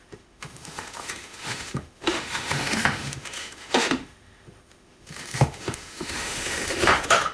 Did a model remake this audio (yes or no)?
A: yes